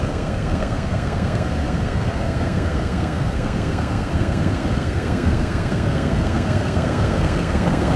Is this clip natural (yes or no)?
no